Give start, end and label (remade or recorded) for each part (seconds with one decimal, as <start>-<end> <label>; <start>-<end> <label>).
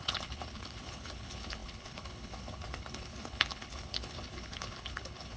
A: 0.0-5.4 remade